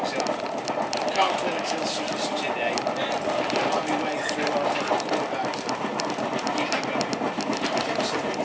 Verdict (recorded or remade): recorded